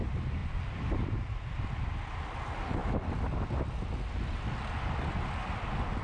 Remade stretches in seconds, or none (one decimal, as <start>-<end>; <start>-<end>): 0.4-1.2